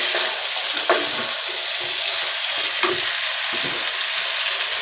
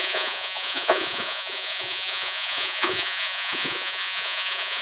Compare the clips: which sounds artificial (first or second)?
second